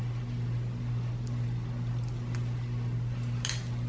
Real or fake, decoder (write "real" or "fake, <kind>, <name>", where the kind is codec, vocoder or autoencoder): real